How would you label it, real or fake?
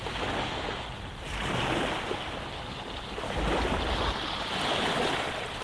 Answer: real